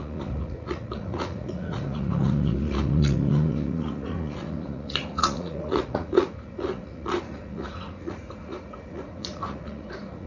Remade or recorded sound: remade